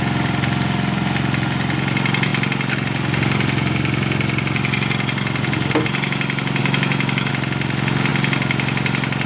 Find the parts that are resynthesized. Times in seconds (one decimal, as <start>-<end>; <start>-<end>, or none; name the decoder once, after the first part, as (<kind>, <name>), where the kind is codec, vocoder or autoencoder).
6.6-7.3 (autoencoder, DAC-VAE)